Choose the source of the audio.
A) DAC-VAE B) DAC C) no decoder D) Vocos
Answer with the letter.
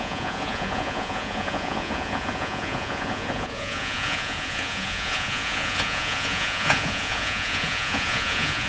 D